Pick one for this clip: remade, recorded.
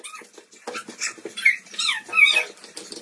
remade